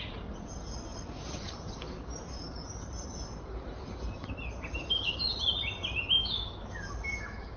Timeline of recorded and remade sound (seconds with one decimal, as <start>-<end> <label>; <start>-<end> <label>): 0.0-6.2 recorded; 6.2-7.6 remade